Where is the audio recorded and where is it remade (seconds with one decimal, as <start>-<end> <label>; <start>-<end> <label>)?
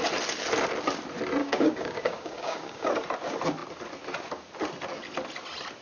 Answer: 0.0-1.4 recorded; 1.4-2.9 remade; 2.9-5.8 recorded